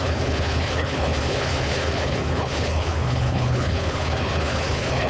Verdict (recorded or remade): remade